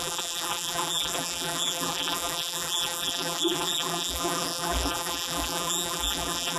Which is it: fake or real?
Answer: fake